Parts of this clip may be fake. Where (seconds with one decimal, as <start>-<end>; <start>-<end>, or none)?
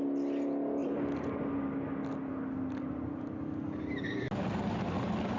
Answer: none